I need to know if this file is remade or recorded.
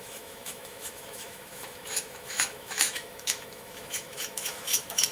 remade